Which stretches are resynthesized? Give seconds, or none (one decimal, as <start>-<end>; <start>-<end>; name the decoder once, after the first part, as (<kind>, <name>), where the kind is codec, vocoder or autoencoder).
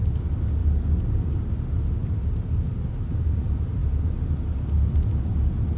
none